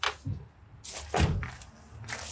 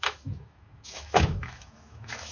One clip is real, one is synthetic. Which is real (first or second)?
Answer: first